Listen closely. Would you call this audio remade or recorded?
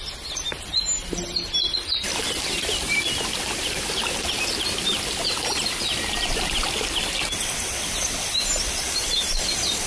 recorded